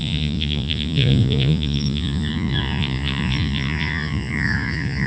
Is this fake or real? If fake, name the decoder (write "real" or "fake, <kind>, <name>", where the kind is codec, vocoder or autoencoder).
fake, vocoder, Vocos